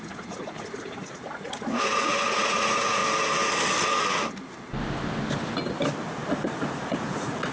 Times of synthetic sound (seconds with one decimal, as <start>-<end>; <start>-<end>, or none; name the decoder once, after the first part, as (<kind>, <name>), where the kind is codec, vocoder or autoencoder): 0.0-3.0 (vocoder, Vocos); 6.3-7.5